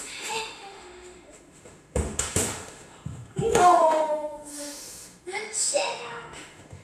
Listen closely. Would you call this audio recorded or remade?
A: remade